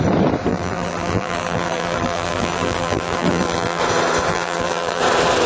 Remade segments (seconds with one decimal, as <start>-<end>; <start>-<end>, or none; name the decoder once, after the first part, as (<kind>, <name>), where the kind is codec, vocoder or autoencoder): 0.5-3.8 (vocoder, BigVGAN v2); 4.3-5.0